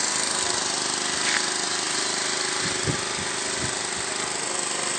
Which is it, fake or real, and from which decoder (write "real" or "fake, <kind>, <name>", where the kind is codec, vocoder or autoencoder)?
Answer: real